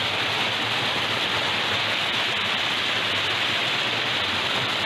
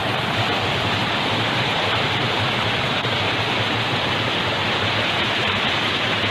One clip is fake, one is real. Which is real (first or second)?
first